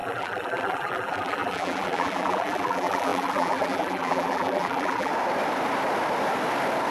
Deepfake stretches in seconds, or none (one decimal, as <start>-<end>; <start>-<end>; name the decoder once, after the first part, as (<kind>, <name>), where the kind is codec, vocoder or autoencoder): 0.0-5.1 (vocoder, BigVGAN v2)